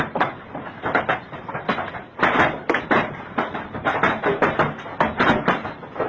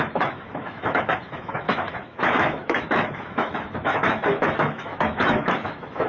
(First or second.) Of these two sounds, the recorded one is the first